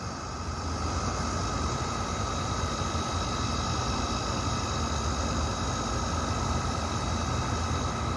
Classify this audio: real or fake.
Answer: real